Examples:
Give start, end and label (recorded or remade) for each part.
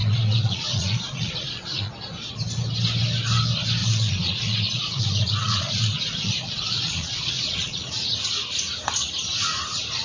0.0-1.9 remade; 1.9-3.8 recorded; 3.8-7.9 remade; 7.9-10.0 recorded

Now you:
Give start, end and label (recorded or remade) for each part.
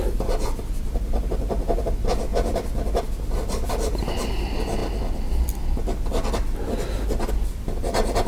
0.0-4.8 remade; 4.8-7.3 recorded; 7.3-8.3 remade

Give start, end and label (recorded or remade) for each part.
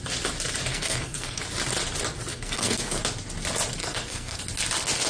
0.0-0.7 recorded; 0.7-1.4 remade; 1.4-2.3 recorded; 2.3-3.0 remade; 3.0-3.8 recorded; 3.8-4.4 remade; 4.4-5.1 recorded